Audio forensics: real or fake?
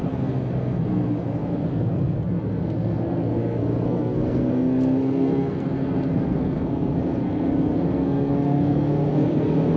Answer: fake